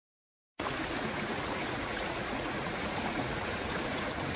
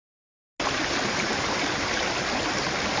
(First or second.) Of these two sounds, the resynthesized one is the first